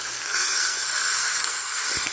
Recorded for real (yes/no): no